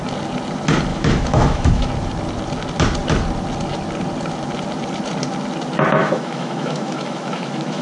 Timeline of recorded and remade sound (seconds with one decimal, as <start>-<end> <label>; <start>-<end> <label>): 0.0-0.9 recorded; 0.9-1.9 remade; 1.9-6.0 recorded; 6.0-7.8 remade